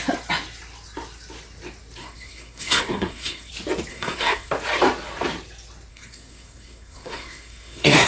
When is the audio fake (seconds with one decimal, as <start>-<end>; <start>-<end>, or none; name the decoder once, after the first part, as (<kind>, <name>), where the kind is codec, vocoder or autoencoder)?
2.0-3.5 (codec, SNAC); 3.9-4.5; 5.9-8.1